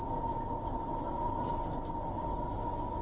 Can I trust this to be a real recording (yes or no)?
yes